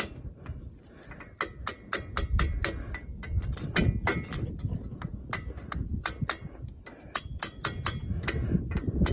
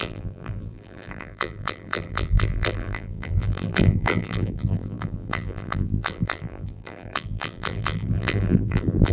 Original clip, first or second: first